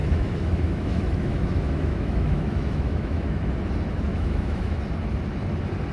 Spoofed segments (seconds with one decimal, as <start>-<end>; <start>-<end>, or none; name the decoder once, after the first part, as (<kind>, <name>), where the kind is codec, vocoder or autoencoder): 0.0-3.5 (autoencoder, DAC-VAE); 4.1-4.8